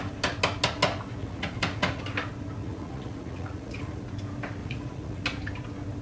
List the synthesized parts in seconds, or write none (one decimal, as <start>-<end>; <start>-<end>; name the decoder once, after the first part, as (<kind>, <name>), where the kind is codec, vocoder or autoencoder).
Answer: 1.2-2.0 (vocoder, Vocos); 2.6-4.0; 4.6-5.2